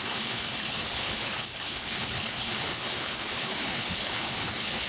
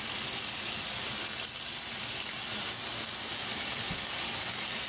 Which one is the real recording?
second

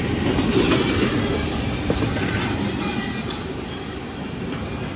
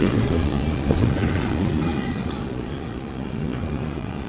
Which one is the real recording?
first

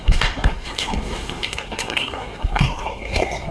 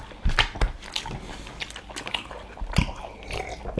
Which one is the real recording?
second